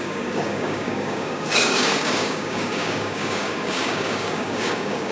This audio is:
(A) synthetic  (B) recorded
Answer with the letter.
A